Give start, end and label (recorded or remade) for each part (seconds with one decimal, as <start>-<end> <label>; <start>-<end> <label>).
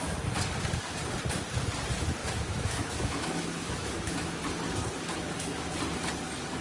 0.0-2.2 recorded; 2.2-4.4 remade; 4.4-6.6 recorded